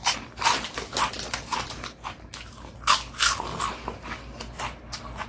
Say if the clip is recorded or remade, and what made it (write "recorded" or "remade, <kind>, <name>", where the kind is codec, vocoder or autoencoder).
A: recorded